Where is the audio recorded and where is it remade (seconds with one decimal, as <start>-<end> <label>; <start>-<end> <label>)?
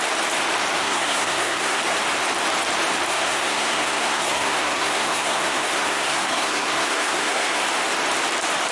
0.0-0.8 recorded; 0.8-1.8 remade; 1.8-3.1 recorded; 3.1-7.6 remade; 7.6-8.7 recorded